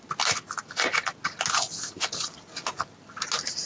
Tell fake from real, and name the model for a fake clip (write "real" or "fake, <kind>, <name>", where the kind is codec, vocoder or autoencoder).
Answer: real